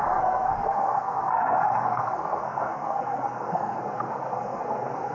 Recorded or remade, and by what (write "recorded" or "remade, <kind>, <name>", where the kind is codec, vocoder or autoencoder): remade, codec, SNAC